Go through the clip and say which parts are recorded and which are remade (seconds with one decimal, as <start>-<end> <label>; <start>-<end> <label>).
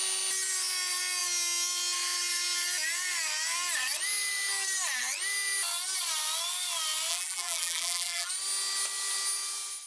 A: 0.0-7.1 recorded; 7.1-8.3 remade; 8.3-9.9 recorded